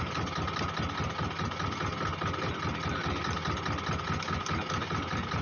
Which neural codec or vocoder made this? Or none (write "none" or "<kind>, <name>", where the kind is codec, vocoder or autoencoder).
none